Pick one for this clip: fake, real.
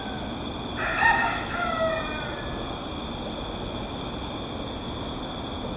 real